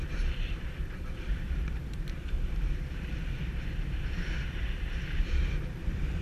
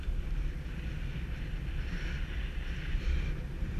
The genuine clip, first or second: second